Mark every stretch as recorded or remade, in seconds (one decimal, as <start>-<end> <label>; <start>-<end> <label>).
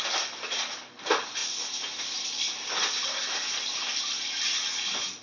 0.0-5.2 recorded